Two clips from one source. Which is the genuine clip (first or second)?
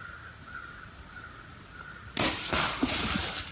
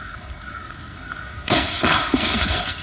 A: first